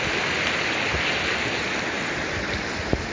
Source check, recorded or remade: recorded